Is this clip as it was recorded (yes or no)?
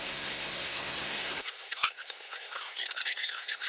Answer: no